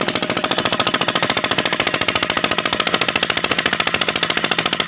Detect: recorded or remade recorded